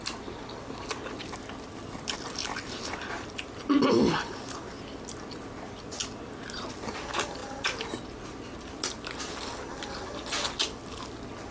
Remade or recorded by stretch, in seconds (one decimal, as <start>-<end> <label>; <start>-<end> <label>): 0.0-1.2 recorded; 1.2-4.6 remade; 4.6-11.5 recorded